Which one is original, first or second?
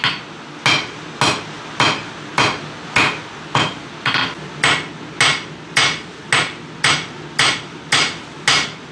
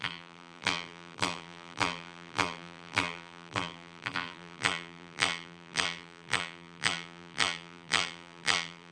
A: first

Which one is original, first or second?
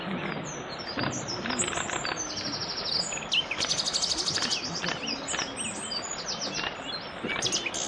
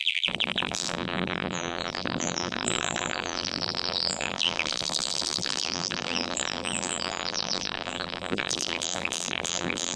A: first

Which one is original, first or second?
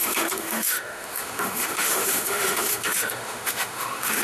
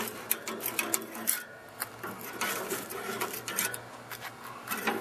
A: second